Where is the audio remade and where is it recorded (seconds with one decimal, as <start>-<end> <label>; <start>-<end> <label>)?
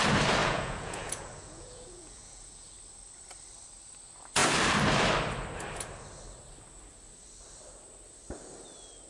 0.0-0.4 recorded; 0.4-2.7 remade; 2.7-9.1 recorded